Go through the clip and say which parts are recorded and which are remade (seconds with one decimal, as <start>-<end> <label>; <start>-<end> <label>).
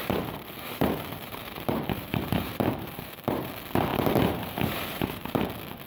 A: 0.0-3.5 remade; 3.5-3.9 recorded; 3.9-5.4 remade; 5.4-5.9 recorded